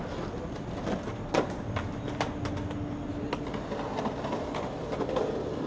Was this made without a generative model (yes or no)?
yes